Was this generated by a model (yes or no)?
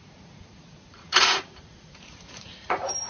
yes